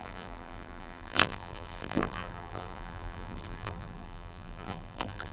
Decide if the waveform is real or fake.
fake